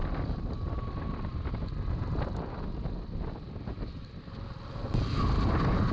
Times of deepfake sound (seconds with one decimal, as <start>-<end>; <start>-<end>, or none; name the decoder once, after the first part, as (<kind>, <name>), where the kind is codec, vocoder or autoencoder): none